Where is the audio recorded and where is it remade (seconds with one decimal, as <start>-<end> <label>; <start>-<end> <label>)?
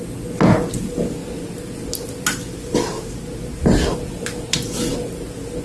0.0-5.6 recorded